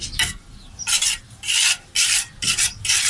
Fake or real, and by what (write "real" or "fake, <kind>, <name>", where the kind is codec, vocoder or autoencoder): real